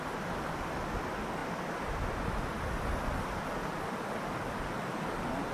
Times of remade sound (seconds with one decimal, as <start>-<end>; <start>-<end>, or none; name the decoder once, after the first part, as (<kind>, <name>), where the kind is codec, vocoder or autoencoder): none